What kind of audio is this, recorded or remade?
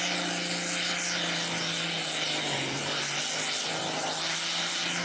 recorded